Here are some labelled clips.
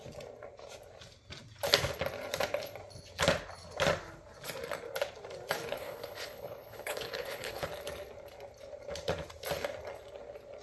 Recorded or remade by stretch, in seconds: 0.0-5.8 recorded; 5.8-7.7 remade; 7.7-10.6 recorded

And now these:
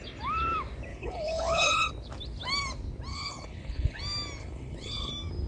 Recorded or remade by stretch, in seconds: 0.0-0.9 recorded; 0.9-1.9 remade; 1.9-3.1 recorded; 3.1-4.0 remade; 4.0-4.4 recorded; 4.4-5.1 remade; 5.1-5.5 recorded

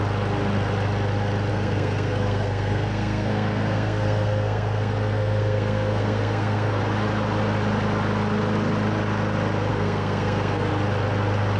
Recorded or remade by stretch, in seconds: 0.0-1.5 recorded; 1.5-6.8 remade; 6.8-9.7 recorded; 9.7-10.7 remade; 10.7-11.6 recorded

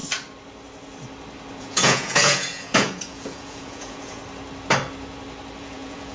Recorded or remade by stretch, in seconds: 0.0-1.6 recorded; 1.6-4.2 remade; 4.2-5.6 recorded; 5.6-6.1 remade

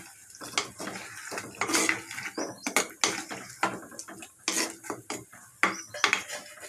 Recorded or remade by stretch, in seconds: 0.0-6.7 recorded

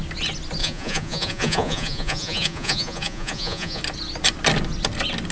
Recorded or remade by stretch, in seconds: 0.0-0.6 recorded; 0.6-3.8 remade; 3.8-5.3 recorded

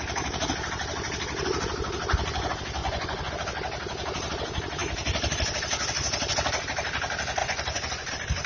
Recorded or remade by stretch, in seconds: 0.0-2.8 recorded; 2.8-3.3 remade; 3.3-7.4 recorded; 7.4-8.1 remade; 8.1-8.5 recorded

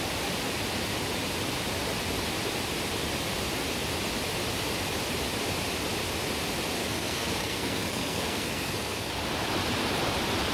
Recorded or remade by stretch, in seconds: 0.0-6.8 recorded; 6.8-9.1 remade; 9.1-10.5 recorded